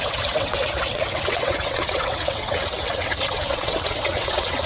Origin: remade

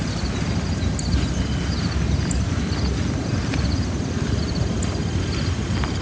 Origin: recorded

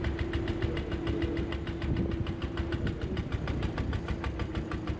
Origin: recorded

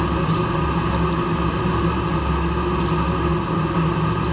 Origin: recorded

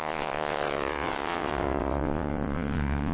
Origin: remade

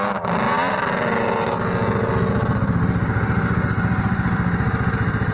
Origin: recorded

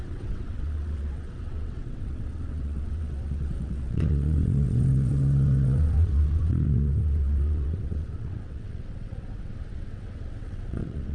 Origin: remade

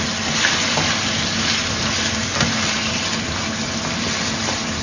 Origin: recorded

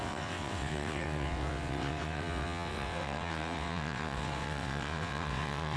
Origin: remade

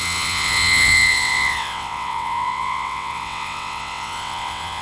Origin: remade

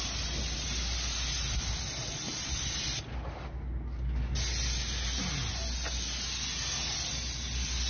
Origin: recorded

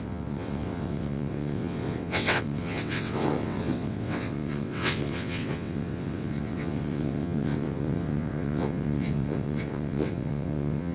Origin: remade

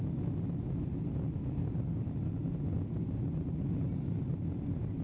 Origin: recorded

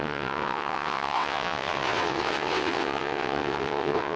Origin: remade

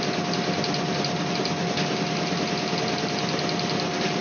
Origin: recorded